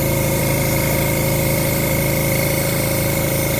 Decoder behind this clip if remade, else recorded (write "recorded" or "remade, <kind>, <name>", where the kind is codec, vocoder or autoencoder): remade, vocoder, BigVGAN v2